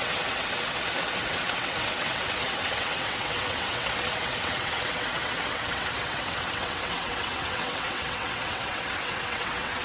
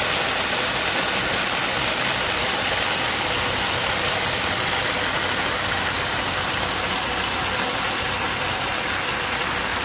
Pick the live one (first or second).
second